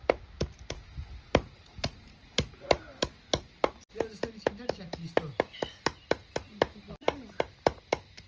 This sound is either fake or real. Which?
real